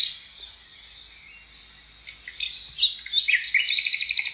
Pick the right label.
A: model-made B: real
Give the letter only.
B